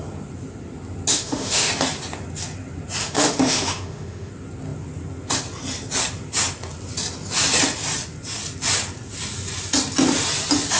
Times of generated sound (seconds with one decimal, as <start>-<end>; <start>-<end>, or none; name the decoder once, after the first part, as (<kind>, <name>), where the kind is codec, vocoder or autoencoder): 1.1-1.7 (autoencoder, DAC-VAE); 3.0-4.3